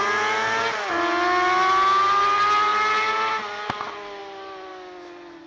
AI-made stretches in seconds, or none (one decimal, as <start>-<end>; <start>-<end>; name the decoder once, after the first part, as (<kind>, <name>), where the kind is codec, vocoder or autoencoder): none